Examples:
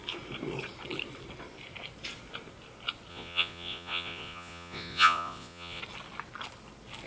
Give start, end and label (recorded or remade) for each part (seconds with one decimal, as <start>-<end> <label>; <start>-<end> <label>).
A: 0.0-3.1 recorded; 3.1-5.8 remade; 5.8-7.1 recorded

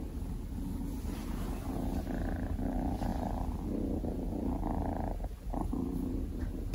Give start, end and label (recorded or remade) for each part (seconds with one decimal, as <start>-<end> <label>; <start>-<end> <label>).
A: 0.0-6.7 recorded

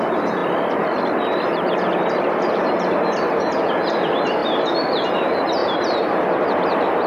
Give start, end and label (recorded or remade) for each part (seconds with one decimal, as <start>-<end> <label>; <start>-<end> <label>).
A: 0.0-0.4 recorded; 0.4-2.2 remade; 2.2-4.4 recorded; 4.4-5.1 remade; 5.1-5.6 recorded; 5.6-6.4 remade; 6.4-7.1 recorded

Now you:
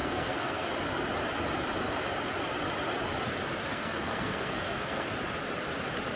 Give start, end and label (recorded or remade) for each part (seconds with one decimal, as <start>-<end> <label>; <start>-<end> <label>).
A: 0.0-0.7 remade; 0.7-3.7 recorded; 3.7-5.1 remade; 5.1-6.2 recorded

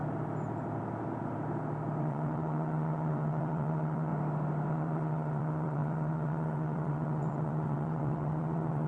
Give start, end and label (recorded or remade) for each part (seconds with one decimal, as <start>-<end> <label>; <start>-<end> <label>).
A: 0.0-2.0 recorded; 2.0-4.1 remade; 4.1-4.7 recorded; 4.7-8.9 remade